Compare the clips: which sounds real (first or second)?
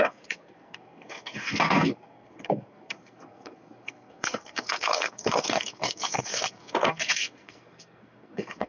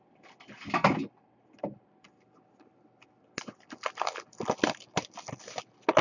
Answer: second